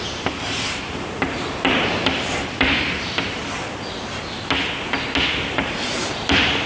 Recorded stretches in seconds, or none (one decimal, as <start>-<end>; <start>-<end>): 3.4-5.5